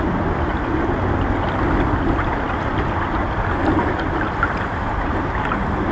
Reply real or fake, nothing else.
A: real